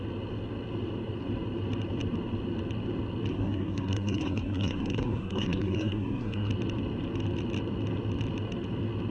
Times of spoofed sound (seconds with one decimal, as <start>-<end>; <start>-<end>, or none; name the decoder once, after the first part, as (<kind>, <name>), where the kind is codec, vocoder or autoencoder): 3.3-6.5 (codec, SNAC)